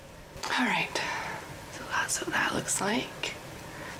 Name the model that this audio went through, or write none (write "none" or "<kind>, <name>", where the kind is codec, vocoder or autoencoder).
vocoder, BigVGAN v2